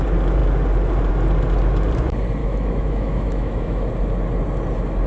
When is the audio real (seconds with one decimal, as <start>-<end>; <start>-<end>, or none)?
0.0-2.4; 3.9-5.1

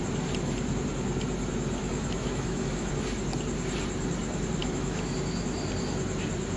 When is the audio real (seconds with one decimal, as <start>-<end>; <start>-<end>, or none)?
0.0-1.8; 2.9-4.6; 5.2-6.6

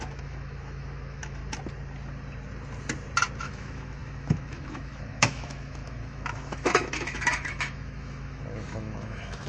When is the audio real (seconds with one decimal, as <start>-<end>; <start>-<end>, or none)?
1.4-3.4

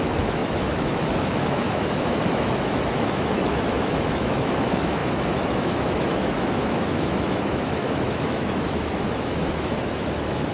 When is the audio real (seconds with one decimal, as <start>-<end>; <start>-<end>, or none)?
none

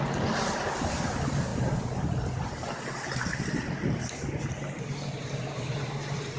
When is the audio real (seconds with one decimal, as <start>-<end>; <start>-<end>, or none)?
0.0-6.4

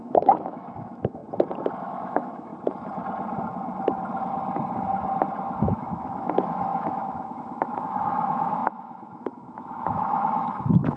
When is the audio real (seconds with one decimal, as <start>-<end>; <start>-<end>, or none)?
1.2-1.8; 2.5-5.6

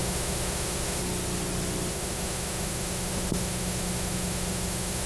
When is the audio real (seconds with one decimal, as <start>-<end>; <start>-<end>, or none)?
1.0-1.9

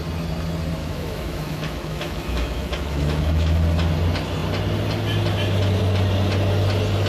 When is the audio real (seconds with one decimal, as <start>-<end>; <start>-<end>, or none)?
0.0-0.8; 3.6-7.1